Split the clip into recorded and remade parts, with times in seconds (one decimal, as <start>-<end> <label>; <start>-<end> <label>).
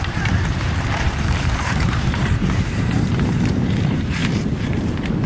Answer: 0.0-4.2 remade; 4.2-5.3 recorded